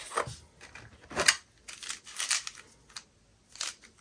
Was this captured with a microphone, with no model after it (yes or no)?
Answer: yes